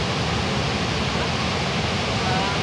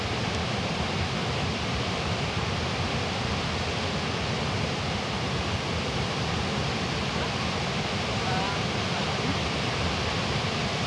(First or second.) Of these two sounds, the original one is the first